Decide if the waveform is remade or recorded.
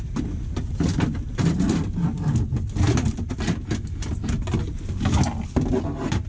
recorded